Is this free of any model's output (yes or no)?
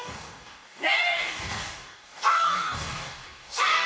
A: no